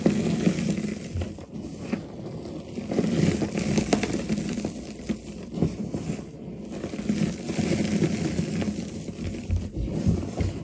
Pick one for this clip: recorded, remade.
recorded